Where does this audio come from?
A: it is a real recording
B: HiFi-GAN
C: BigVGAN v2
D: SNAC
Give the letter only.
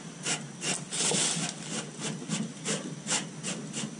A